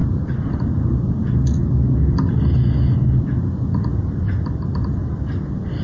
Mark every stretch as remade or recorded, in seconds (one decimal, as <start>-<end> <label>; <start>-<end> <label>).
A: 0.0-1.6 remade; 1.6-3.4 recorded; 3.4-5.8 remade